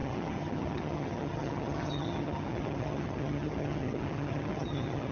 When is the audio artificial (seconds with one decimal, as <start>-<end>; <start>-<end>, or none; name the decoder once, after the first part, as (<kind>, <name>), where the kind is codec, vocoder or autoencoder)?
0.0-5.1 (vocoder, HiFi-GAN)